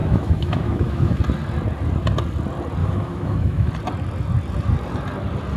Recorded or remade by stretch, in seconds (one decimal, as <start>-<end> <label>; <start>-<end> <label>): 0.0-1.2 remade; 1.2-2.8 recorded; 2.8-3.7 remade; 3.7-5.6 recorded